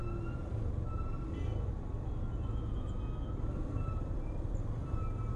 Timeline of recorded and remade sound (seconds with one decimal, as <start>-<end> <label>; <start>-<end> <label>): 0.0-5.4 recorded